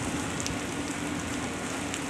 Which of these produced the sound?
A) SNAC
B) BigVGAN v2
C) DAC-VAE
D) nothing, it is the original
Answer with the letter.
D